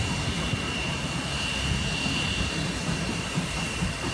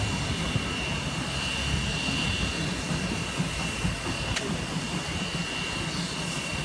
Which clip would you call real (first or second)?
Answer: second